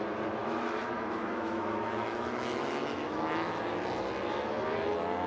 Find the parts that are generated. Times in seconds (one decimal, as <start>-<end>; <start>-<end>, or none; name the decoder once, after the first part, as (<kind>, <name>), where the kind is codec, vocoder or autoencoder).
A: 0.4-3.6 (autoencoder, DAC-VAE)